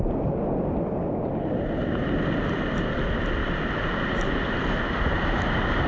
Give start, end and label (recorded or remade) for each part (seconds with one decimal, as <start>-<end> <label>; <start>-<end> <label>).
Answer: 0.0-3.4 recorded; 3.4-5.5 remade; 5.5-5.9 recorded